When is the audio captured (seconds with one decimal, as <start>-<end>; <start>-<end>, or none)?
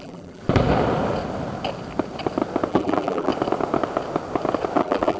0.4-2.7; 3.3-4.8